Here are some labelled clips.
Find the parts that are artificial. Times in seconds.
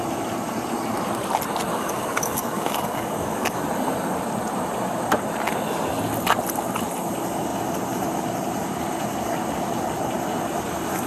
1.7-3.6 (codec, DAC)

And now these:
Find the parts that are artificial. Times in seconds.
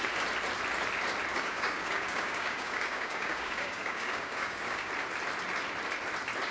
1.3-4.9 (codec, DAC)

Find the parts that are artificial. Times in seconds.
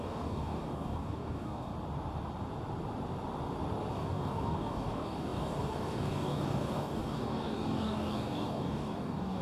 0.0-1.7 (codec, DAC); 3.9-9.4